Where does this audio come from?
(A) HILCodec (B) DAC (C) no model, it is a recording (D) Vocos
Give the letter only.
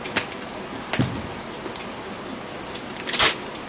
C